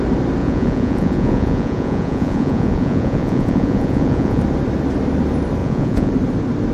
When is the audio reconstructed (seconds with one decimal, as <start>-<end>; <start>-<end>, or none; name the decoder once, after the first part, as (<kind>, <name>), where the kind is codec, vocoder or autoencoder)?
0.4-4.4 (vocoder, Vocos); 5.6-6.1